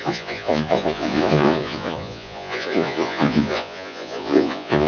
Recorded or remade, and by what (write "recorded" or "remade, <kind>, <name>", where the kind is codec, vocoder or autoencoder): remade, vocoder, Vocos